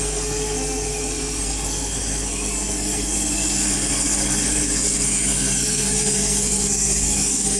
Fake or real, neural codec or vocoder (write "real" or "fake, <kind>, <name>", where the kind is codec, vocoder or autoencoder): fake, codec, SNAC